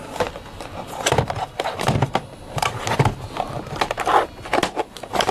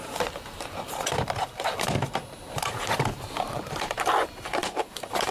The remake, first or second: second